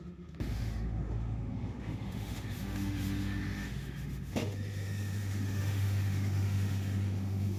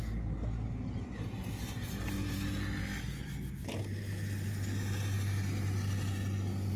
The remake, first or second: first